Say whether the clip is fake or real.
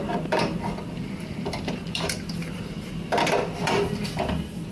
fake